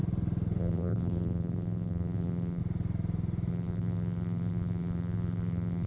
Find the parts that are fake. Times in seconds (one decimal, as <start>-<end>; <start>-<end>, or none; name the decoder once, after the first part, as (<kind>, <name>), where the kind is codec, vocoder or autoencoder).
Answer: 0.6-2.6 (vocoder, BigVGAN v2); 3.5-5.9